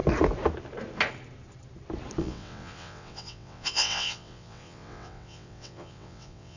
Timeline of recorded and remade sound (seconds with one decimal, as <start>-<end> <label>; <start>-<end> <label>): 0.0-2.2 recorded; 2.2-6.6 remade